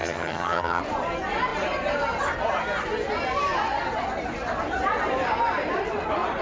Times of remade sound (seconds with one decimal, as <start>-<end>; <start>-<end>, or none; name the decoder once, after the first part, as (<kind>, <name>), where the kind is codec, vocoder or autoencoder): 0.0-0.8 (vocoder, HiFi-GAN)